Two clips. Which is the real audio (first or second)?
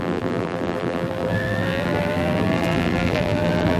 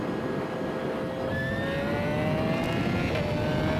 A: second